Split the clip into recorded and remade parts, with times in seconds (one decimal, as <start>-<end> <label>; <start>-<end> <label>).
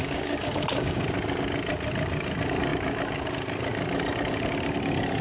0.0-1.0 remade; 1.0-5.2 recorded